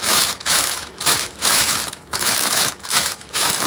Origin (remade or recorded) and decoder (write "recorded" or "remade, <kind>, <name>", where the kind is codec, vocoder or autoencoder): remade, autoencoder, DAC-VAE